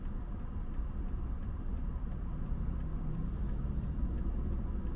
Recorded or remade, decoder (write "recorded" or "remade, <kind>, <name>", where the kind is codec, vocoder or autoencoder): remade, vocoder, BigVGAN v2